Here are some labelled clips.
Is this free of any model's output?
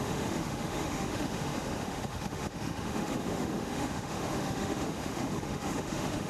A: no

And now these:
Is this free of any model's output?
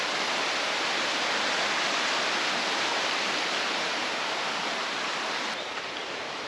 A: yes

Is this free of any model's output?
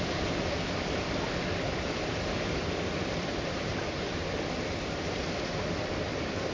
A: no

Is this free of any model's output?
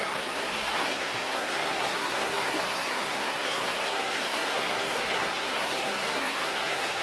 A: no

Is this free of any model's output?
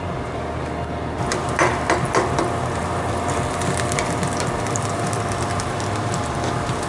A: no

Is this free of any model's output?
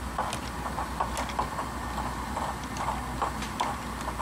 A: yes